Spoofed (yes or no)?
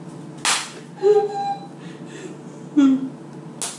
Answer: no